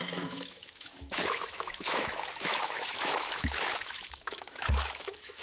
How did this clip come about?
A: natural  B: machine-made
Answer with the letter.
B